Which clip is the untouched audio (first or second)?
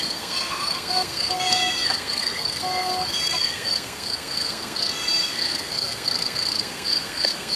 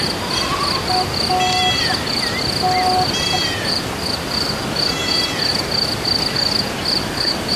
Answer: second